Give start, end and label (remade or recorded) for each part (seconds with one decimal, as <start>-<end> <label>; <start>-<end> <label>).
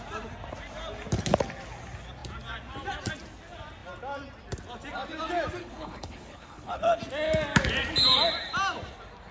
0.0-5.6 recorded; 5.6-7.0 remade; 7.0-9.3 recorded